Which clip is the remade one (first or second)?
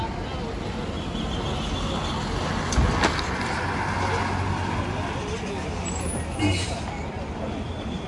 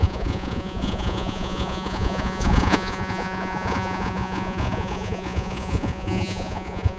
second